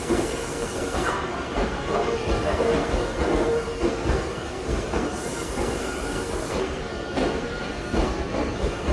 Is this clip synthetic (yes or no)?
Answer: yes